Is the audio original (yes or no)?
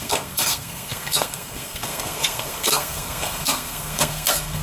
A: no